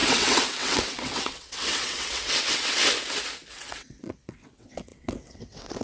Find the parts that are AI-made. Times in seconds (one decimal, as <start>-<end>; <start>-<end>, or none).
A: 0.0-2.8; 3.5-5.8